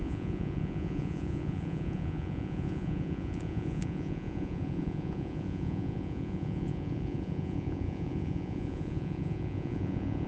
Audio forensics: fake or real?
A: fake